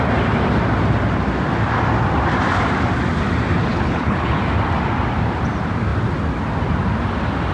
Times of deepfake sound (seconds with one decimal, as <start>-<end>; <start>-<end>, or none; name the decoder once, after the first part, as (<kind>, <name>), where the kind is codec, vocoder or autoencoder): 3.7-4.4 (codec, HILCodec)